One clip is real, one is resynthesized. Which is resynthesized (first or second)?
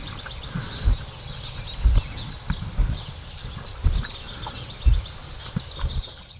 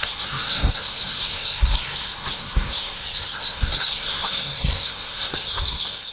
second